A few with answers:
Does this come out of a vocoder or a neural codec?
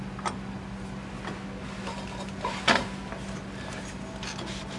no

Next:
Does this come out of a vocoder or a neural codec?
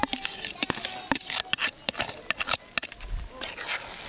no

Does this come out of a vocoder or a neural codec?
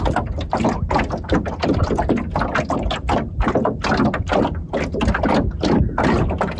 no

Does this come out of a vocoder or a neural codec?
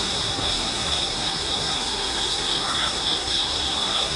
yes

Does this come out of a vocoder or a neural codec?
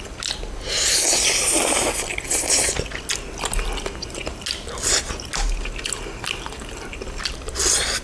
no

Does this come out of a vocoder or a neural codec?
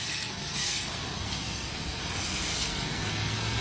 yes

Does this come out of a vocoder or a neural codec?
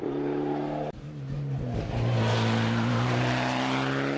no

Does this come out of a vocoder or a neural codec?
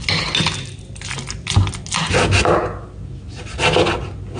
no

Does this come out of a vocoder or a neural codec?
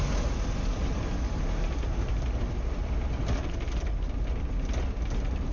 no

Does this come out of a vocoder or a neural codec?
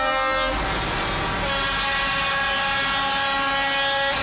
no